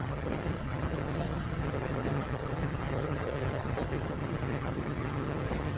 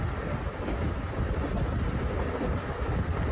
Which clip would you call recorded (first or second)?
second